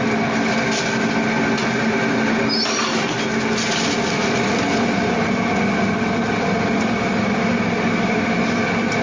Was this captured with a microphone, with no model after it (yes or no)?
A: yes